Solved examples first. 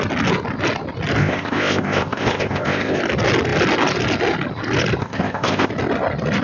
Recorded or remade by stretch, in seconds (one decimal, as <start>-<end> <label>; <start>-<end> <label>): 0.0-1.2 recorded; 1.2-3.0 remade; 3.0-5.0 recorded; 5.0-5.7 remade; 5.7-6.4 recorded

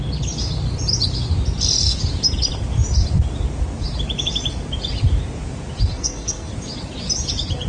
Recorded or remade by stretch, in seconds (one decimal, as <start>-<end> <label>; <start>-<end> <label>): 0.0-5.9 recorded; 5.9-6.5 remade; 6.5-7.7 recorded

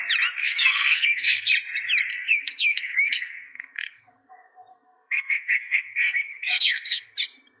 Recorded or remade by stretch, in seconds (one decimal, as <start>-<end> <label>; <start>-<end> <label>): 0.0-0.4 recorded; 0.4-1.5 remade; 1.5-2.1 recorded; 2.1-4.3 remade; 4.3-4.7 recorded; 4.7-7.0 remade; 7.0-7.6 recorded